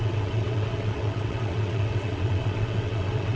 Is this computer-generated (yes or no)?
yes